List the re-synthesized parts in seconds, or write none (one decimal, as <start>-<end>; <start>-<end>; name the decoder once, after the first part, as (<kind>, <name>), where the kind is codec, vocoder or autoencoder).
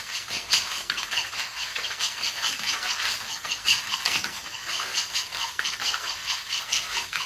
0.0-7.3 (codec, SNAC)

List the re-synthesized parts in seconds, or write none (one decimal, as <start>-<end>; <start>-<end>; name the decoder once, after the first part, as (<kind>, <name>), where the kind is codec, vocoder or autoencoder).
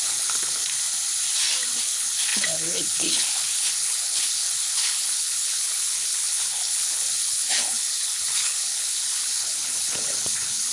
0.0-0.7 (codec, HILCodec); 1.8-10.7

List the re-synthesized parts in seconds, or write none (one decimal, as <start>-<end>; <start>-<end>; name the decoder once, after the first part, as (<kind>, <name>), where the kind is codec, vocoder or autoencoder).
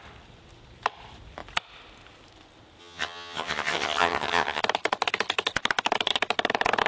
2.8-4.6 (vocoder, HiFi-GAN)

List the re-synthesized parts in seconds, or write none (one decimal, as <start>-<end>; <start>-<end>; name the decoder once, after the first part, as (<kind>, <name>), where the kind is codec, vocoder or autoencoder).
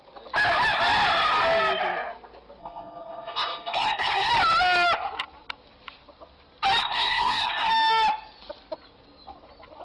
2.6-4.3 (codec, SNAC); 6.8-7.7